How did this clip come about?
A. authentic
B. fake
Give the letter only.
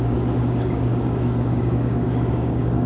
B